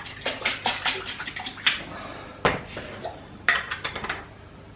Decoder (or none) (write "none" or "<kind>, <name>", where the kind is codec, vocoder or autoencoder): none